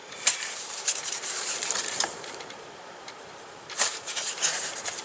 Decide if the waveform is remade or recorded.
remade